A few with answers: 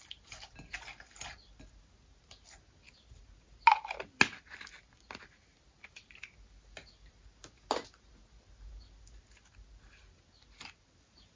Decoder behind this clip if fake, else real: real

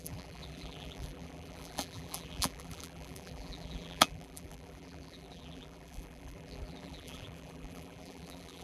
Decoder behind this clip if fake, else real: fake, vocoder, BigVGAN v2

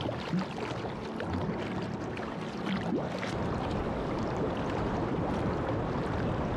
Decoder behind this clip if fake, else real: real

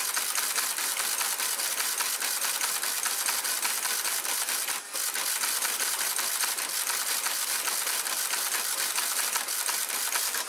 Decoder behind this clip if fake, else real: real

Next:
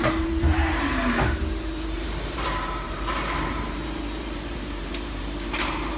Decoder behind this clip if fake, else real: fake, vocoder, BigVGAN v2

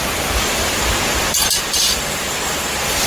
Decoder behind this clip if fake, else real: fake, vocoder, BigVGAN v2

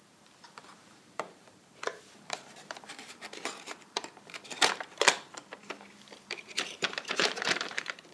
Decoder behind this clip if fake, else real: fake, vocoder, BigVGAN v2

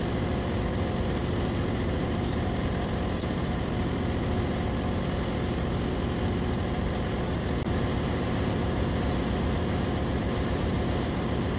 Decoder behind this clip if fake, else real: fake, vocoder, BigVGAN v2